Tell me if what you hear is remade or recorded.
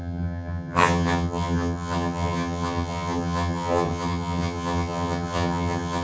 remade